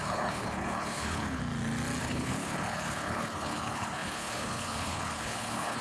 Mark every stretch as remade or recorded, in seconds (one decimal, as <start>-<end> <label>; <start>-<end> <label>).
0.0-1.4 remade; 1.4-2.0 recorded; 2.0-5.8 remade